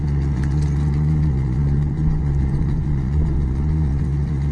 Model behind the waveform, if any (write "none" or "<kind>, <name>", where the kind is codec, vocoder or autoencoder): vocoder, Vocos